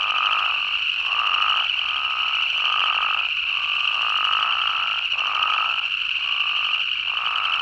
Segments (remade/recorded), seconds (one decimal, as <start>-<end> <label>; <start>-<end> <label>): 0.0-7.6 recorded